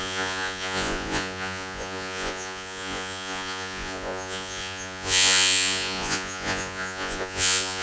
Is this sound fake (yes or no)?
yes